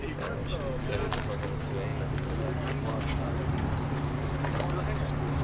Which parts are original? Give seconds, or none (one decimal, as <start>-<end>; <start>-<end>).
0.0-5.4